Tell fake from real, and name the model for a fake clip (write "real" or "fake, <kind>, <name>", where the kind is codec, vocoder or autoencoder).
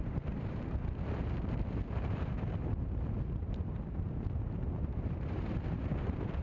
fake, vocoder, BigVGAN v2